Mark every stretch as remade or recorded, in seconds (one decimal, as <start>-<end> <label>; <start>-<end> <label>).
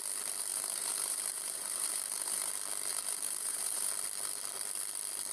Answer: 0.0-0.5 recorded; 0.5-2.5 remade; 2.5-2.9 recorded; 2.9-3.9 remade; 3.9-5.3 recorded